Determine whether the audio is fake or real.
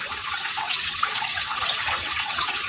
fake